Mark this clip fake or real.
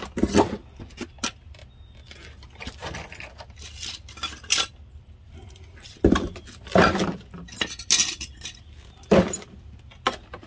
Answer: real